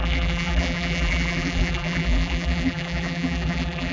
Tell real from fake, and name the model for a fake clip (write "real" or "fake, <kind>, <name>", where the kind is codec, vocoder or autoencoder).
fake, vocoder, BigVGAN v2